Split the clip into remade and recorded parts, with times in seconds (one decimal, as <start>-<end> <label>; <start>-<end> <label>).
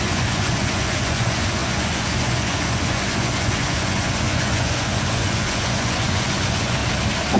0.0-6.8 remade; 6.8-7.4 recorded